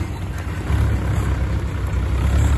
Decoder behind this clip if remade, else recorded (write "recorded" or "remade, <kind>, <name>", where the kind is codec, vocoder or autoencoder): recorded